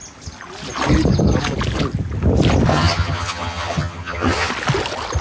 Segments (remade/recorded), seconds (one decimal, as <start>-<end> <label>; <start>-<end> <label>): 0.0-2.7 recorded; 2.7-4.5 remade; 4.5-5.2 recorded